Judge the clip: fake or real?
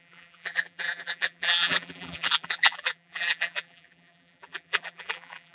fake